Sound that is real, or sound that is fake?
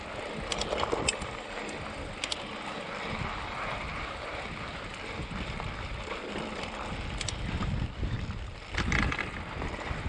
real